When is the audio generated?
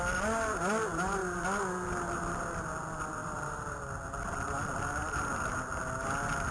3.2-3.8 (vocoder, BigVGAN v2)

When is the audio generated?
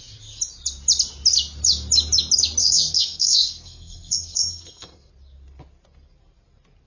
2.6-5.1 (codec, SNAC)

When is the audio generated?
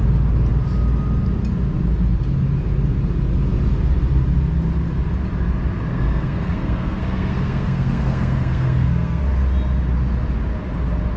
5.9-9.2 (codec, SNAC)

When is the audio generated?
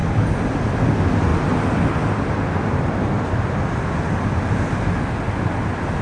none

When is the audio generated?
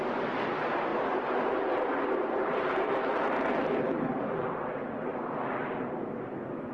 none